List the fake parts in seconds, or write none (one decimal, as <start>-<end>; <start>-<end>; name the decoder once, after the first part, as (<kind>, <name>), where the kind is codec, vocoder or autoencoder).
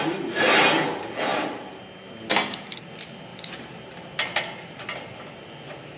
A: 1.3-1.8 (vocoder, BigVGAN v2)